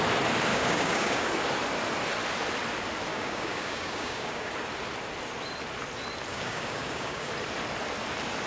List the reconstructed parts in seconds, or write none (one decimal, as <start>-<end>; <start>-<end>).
0.5-1.3; 3.1-4.5; 6.3-7.3